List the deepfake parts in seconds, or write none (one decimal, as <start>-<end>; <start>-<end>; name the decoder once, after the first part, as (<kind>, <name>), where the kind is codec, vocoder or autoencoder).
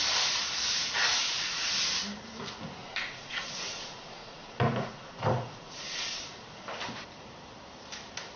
1.2-1.7 (vocoder, Vocos); 2.8-6.2